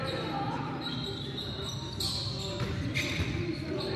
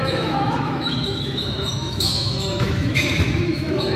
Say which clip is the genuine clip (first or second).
first